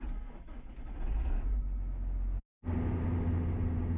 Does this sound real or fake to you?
real